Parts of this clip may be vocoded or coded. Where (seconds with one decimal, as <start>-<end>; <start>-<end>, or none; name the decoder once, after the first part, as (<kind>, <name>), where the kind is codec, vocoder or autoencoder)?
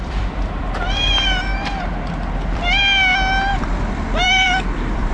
0.0-1.5 (vocoder, BigVGAN v2); 2.3-2.8; 3.5-5.1